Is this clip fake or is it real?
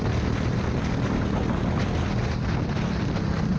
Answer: real